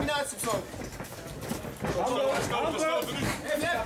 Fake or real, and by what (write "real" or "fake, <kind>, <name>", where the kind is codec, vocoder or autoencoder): real